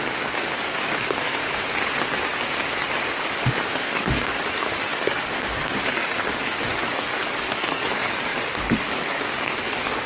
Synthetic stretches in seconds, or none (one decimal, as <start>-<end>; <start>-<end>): 0.0-1.4; 3.3-10.1